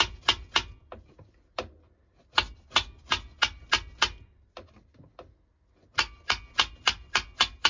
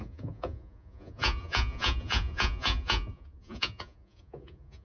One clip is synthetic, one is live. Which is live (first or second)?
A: first